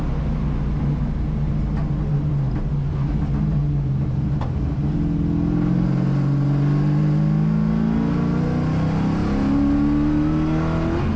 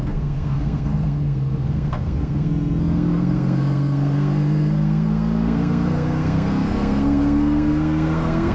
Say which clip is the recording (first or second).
first